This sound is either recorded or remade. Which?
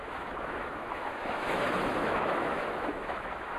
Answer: remade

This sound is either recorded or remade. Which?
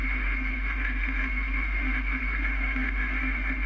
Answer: remade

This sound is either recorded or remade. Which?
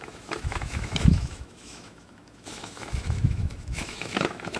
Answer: remade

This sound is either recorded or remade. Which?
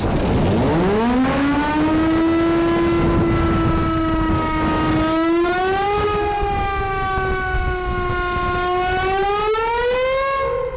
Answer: recorded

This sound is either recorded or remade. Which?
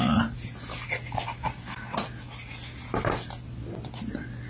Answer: recorded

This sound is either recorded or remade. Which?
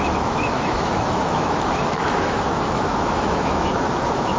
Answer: remade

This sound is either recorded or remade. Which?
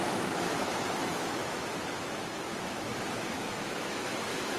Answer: remade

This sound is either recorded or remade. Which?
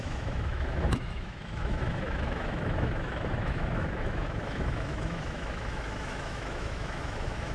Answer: remade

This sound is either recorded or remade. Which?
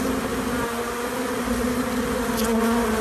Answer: recorded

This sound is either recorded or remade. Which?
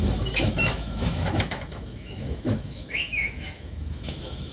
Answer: remade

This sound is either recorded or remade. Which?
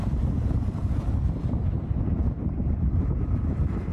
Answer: recorded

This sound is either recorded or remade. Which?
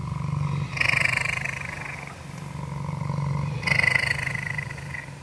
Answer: recorded